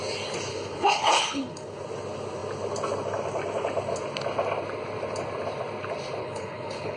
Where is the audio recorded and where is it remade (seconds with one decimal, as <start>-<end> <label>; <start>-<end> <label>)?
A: 0.0-0.5 recorded; 0.5-1.8 remade; 1.8-6.2 recorded; 6.2-7.0 remade